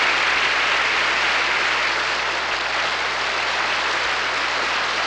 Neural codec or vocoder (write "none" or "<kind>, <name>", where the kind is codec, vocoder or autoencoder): none